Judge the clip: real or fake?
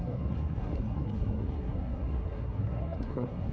fake